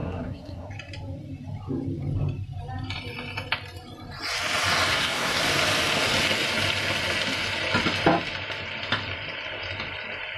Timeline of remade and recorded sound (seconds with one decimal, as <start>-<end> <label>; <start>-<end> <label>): 0.0-0.7 remade; 0.7-4.9 recorded; 4.9-5.4 remade; 5.4-10.4 recorded